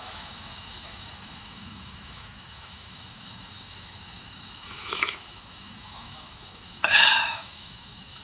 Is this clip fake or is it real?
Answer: fake